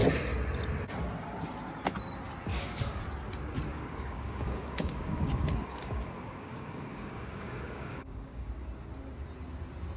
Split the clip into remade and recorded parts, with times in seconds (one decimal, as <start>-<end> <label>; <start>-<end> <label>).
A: 0.0-2.5 recorded; 2.5-3.0 remade; 3.0-3.7 recorded; 3.7-8.5 remade; 8.5-10.0 recorded